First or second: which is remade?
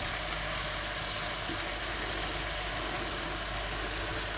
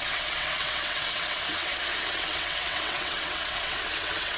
second